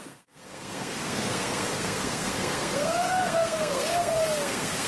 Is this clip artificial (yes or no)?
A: yes